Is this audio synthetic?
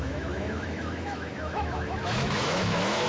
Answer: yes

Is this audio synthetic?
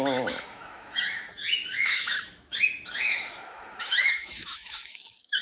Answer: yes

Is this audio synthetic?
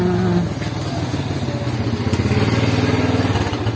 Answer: no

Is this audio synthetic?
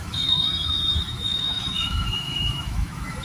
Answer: yes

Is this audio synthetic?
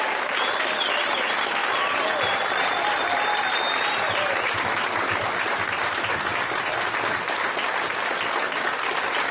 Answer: no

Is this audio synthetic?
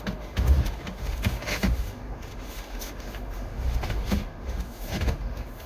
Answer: yes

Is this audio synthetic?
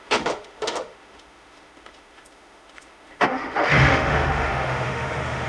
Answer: yes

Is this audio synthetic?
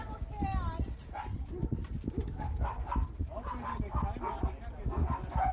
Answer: no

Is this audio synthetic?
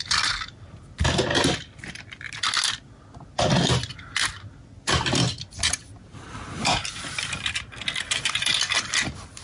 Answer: no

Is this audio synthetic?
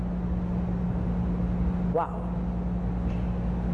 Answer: no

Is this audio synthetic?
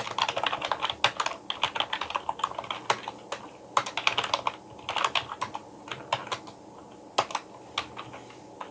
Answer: no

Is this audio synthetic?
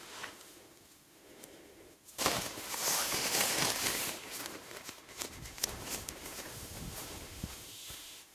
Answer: yes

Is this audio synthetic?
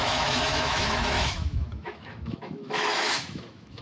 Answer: yes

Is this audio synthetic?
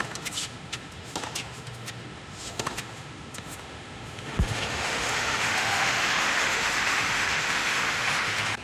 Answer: yes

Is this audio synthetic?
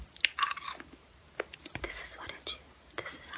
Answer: no